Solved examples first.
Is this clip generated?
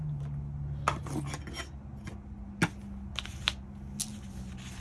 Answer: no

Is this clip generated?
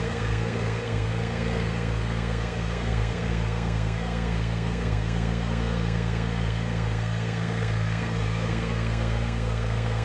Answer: yes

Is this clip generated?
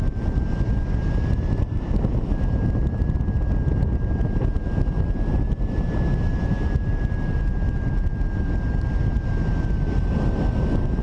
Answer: no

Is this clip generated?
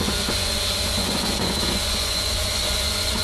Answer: yes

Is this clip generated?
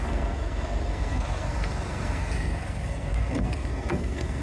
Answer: yes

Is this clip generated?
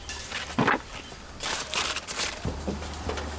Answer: yes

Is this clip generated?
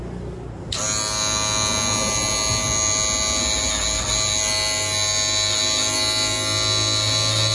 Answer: no